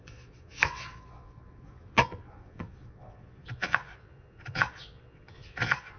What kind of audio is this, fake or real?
fake